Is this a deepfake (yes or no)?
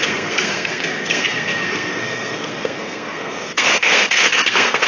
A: yes